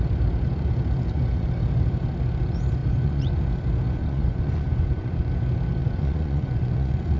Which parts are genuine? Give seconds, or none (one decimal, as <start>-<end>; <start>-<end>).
0.0-2.8; 3.4-4.0; 5.3-5.8